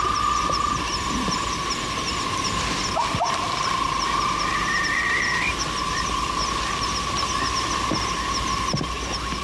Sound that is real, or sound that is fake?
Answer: real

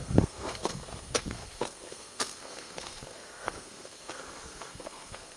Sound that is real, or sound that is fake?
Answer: fake